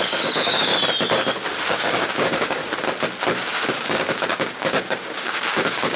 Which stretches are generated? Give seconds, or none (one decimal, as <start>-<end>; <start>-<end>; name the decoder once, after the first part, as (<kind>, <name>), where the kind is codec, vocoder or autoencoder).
0.0-0.7 (codec, DAC); 1.7-2.6; 3.7-6.0